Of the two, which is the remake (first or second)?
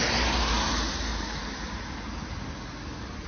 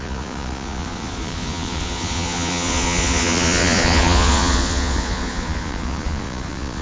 second